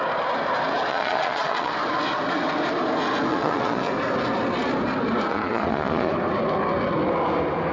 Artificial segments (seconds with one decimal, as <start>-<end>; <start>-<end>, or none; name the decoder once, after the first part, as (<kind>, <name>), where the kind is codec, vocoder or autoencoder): 0.9-1.7 (vocoder, Vocos); 3.3-3.9; 5.3-6.1